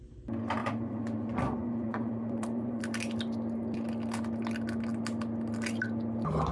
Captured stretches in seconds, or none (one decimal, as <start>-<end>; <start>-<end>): 0.0-0.6; 2.8-6.5